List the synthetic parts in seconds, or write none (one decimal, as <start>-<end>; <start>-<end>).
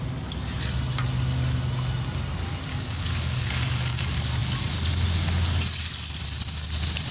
2.7-4.0